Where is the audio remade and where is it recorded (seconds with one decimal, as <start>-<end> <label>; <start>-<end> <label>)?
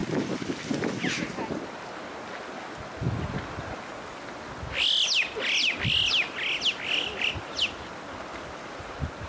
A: 0.0-9.3 recorded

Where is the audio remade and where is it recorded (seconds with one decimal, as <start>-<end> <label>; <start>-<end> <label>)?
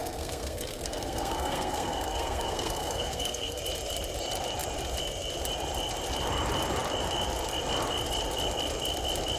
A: 0.0-3.6 remade; 3.6-9.4 recorded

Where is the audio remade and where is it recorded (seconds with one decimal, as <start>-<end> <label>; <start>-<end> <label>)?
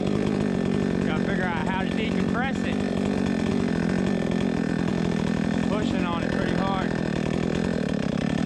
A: 0.0-8.5 recorded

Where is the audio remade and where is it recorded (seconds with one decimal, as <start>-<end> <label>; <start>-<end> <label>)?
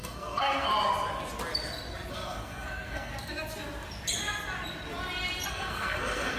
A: 0.0-0.7 remade; 0.7-2.1 recorded; 2.1-3.1 remade; 3.1-5.5 recorded; 5.5-6.4 remade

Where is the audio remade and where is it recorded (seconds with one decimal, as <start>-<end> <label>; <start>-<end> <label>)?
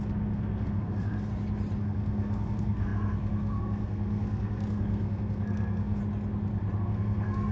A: 0.0-1.3 remade; 1.3-1.8 recorded; 1.8-6.0 remade; 6.0-6.8 recorded; 6.8-7.5 remade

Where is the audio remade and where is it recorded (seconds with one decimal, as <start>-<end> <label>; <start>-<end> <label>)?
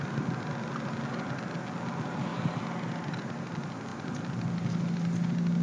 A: 0.0-5.6 recorded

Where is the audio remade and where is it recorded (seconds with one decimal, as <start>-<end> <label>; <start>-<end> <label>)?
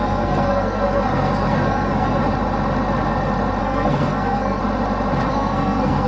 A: 0.0-2.2 remade; 2.2-3.6 recorded; 3.6-4.6 remade; 4.6-5.3 recorded; 5.3-6.1 remade